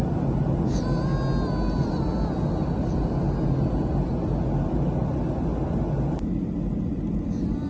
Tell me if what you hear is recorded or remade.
recorded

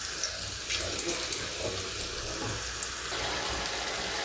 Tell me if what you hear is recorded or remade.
recorded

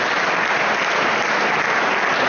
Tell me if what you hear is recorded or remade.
recorded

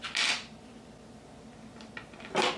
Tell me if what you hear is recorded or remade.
recorded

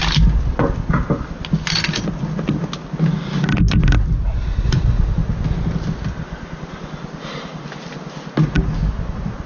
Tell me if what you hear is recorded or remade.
recorded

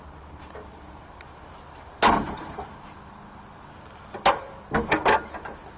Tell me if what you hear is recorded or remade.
recorded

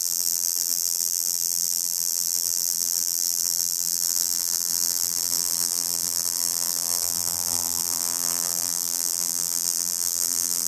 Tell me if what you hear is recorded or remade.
remade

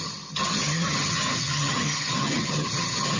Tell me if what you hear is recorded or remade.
remade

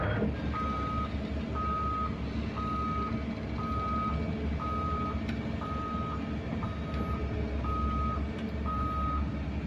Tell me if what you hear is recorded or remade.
recorded